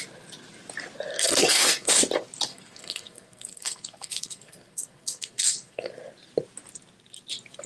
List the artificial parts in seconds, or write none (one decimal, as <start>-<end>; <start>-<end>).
1.1-1.9; 2.5-5.9